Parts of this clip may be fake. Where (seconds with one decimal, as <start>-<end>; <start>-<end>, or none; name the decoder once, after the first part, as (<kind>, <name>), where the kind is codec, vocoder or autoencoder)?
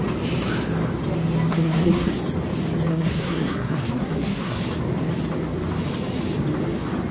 1.5-2.1 (codec, SNAC); 2.9-4.6